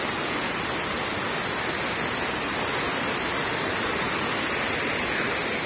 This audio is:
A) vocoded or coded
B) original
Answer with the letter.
B